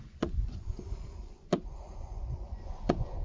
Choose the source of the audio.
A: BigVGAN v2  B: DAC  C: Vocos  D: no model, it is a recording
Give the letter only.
C